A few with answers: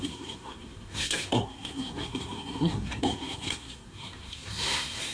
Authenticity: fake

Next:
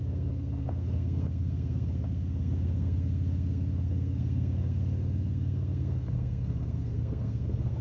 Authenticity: fake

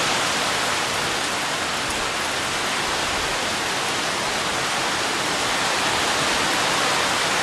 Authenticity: real